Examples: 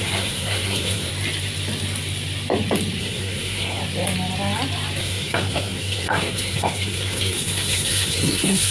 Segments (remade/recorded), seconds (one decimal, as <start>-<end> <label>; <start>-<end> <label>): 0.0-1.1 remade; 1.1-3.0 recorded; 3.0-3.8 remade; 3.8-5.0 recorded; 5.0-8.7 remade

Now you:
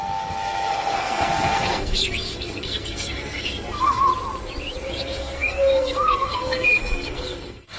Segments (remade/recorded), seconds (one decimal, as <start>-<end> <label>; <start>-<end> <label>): 0.0-4.1 remade; 4.1-4.9 recorded; 4.9-7.8 remade

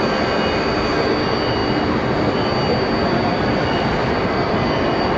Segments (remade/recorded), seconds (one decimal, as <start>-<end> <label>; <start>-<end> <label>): 0.0-5.2 recorded

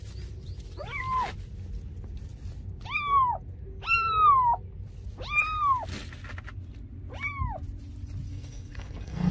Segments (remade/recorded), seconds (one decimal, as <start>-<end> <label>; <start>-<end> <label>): 0.0-8.3 recorded; 8.3-9.3 remade

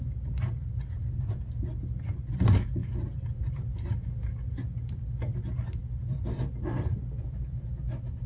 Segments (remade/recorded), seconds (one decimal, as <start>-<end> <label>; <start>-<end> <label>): 0.0-8.3 recorded

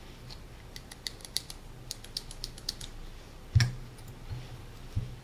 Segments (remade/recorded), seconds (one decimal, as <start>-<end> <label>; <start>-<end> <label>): 0.0-5.2 recorded

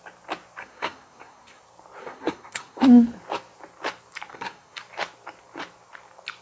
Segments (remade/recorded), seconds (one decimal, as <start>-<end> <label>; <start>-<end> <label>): 0.0-0.6 recorded; 0.6-1.6 remade; 1.6-2.0 recorded; 2.0-2.8 remade; 2.8-4.3 recorded; 4.3-4.8 remade; 4.8-6.4 recorded

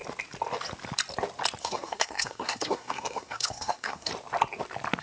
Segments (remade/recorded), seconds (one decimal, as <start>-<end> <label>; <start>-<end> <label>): 0.0-1.6 recorded; 1.6-4.1 remade; 4.1-5.0 recorded